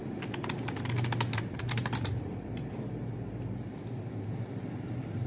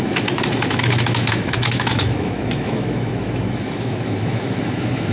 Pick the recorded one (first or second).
first